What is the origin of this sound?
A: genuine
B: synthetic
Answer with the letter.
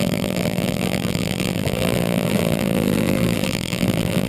B